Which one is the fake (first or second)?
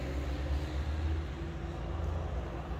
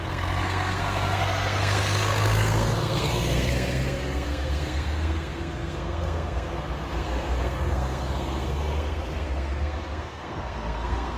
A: second